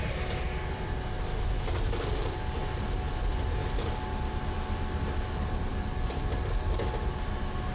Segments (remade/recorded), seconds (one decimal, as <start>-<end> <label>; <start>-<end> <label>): 0.0-1.3 recorded; 1.3-2.4 remade; 2.4-5.7 recorded; 5.7-6.5 remade; 6.5-7.7 recorded